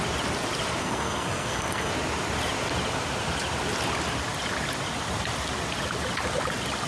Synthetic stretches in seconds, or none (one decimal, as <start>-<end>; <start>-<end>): 0.8-1.9